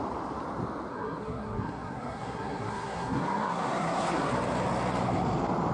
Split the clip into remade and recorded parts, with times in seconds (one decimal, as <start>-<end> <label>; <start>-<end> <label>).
0.0-0.9 recorded; 0.9-4.3 remade; 4.3-5.7 recorded